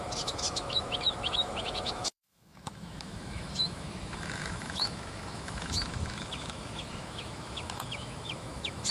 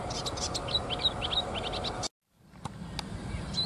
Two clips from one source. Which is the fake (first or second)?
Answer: first